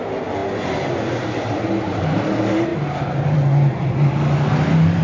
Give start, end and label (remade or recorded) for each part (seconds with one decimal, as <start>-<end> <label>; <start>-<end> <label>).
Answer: 0.0-5.0 recorded